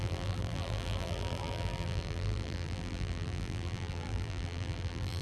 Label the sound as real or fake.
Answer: fake